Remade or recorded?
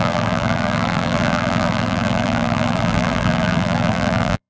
remade